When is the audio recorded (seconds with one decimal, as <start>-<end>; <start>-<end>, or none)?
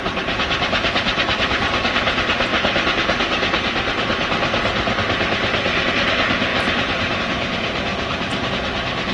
0.0-6.5; 7.2-7.9; 8.5-9.1